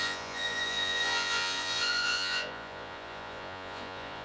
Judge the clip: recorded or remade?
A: remade